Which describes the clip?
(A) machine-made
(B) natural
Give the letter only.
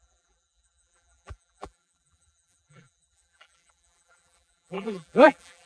A